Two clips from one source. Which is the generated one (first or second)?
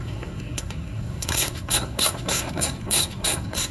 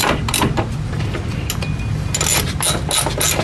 first